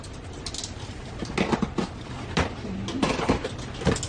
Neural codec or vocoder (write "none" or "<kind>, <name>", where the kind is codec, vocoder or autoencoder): none